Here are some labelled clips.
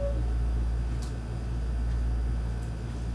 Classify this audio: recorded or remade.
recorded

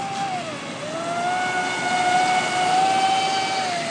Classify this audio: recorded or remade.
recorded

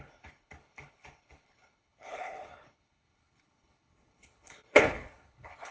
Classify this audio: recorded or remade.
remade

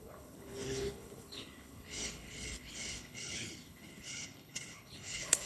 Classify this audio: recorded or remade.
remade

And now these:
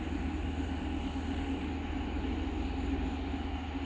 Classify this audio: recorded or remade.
recorded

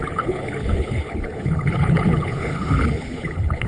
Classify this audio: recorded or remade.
remade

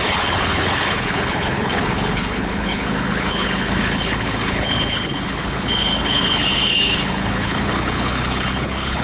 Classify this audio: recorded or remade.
remade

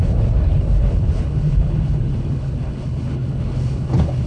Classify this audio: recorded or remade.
remade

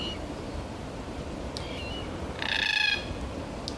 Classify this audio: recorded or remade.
recorded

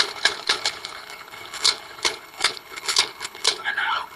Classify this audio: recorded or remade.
remade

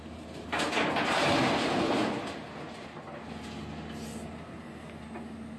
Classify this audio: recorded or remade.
recorded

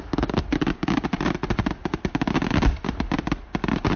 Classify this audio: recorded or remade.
recorded